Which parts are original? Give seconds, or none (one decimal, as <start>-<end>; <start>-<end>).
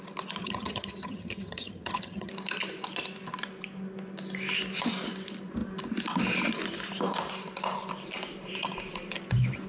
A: 0.0-0.4; 2.3-9.7